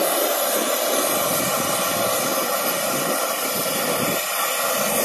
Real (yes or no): yes